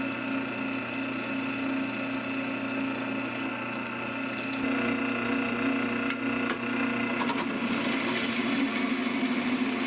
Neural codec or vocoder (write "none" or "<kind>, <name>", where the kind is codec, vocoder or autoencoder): none